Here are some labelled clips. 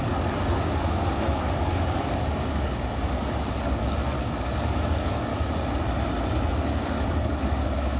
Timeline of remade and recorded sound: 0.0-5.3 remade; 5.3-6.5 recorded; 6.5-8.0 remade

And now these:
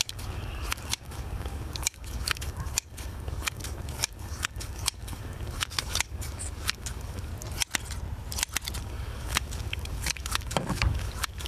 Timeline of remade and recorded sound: 0.0-7.3 remade; 7.3-8.8 recorded; 8.8-11.5 remade

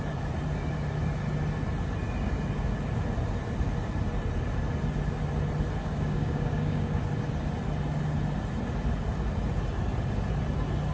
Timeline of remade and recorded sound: 0.0-5.8 recorded; 5.8-7.0 remade; 7.0-10.9 recorded

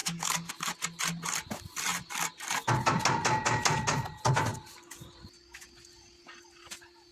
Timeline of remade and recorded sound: 0.0-0.5 remade; 0.5-7.1 recorded

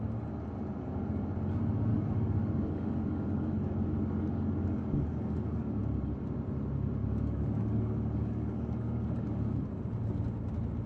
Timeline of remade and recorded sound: 0.0-1.9 recorded; 1.9-5.8 remade; 5.8-7.0 recorded; 7.0-9.6 remade; 9.6-10.9 recorded

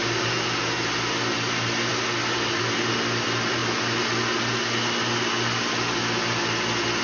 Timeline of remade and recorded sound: 0.0-7.0 recorded

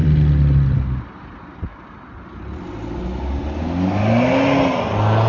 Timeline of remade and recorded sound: 0.0-5.3 recorded

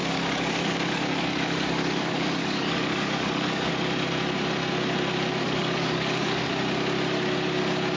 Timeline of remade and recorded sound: 0.0-3.7 remade; 3.7-5.4 recorded; 5.4-6.5 remade; 6.5-8.0 recorded